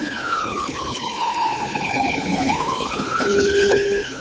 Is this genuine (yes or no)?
no